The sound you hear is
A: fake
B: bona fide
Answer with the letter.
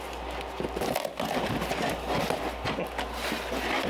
B